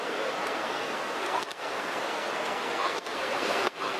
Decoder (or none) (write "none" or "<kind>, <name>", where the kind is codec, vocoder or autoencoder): codec, SNAC